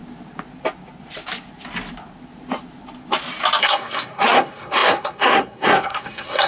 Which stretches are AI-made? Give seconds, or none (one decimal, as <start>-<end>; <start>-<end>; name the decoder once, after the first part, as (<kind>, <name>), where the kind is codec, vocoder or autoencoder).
3.6-6.5 (codec, SNAC)